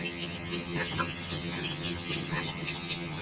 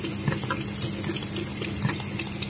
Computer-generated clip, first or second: first